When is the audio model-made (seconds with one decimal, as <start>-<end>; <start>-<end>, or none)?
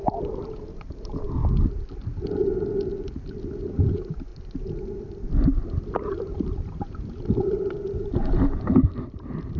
0.6-1.4; 3.4-4.3; 5.9-9.6